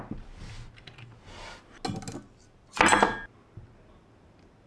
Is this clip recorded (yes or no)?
yes